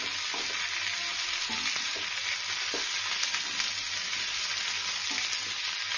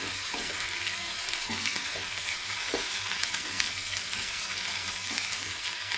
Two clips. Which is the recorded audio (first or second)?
first